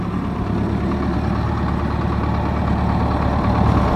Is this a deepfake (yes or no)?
yes